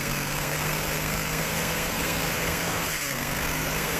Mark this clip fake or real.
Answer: fake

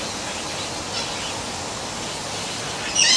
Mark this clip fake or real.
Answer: real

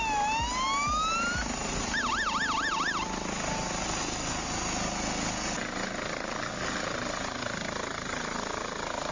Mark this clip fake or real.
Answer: real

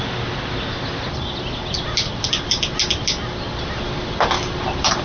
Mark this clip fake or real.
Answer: real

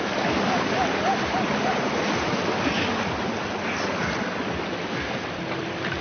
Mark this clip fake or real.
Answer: real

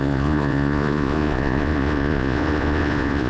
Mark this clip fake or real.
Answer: fake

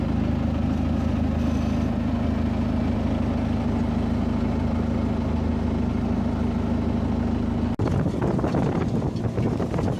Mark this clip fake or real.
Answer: real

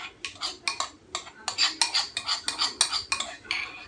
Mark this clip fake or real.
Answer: real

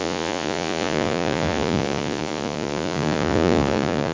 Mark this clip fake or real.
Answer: fake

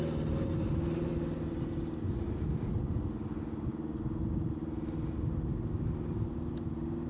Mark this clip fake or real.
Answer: real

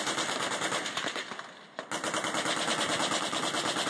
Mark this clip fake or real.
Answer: real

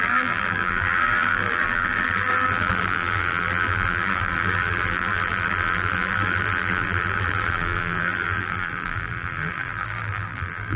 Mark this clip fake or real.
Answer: fake